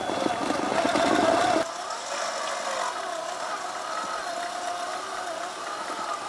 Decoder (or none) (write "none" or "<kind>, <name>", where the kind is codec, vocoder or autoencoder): none